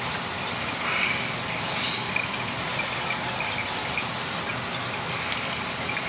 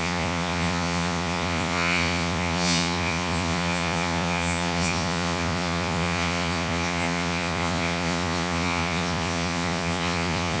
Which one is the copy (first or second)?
second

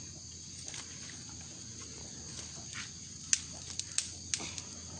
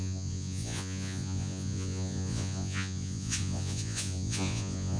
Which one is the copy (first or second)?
second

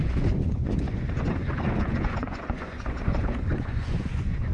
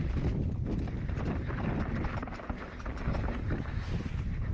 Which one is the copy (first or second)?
first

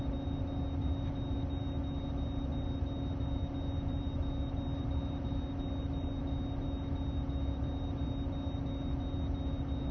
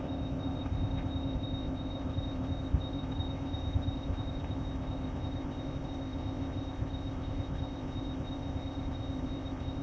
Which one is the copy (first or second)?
second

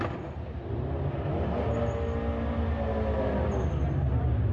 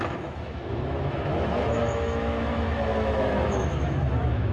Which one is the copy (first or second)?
second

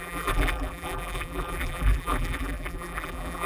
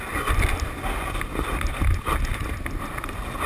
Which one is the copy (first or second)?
first